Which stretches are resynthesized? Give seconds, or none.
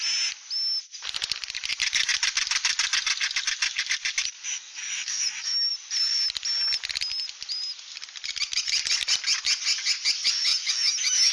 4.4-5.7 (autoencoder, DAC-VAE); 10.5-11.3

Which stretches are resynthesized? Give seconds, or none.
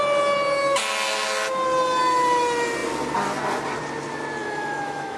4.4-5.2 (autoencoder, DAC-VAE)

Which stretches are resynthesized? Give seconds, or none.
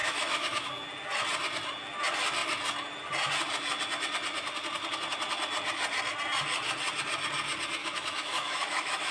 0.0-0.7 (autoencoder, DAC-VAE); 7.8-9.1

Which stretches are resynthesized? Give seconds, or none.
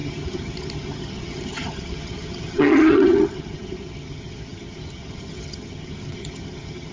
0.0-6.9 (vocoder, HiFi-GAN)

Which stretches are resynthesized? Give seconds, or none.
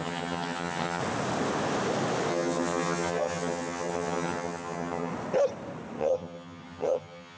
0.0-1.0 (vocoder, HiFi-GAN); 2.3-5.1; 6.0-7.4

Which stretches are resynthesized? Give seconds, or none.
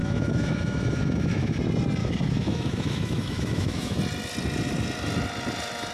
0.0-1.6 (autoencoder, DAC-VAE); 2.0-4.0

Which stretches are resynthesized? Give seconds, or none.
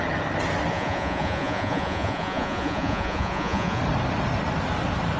0.7-3.8 (vocoder, Vocos)